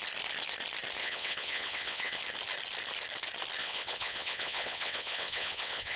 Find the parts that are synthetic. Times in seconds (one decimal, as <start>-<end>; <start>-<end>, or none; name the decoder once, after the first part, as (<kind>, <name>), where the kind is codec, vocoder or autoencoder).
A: 1.0-2.2 (vocoder, WaveNeXt); 3.6-6.0